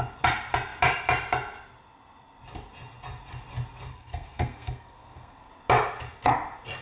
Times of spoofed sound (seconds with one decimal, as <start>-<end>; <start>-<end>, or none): 3.9-5.5